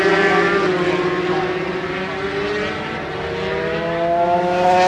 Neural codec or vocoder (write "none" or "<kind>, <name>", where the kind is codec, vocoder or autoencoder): none